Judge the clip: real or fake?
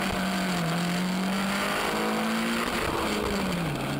real